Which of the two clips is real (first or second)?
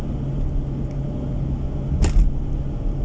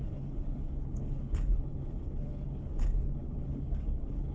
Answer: first